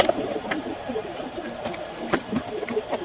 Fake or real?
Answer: fake